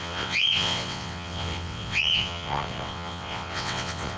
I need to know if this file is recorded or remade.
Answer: remade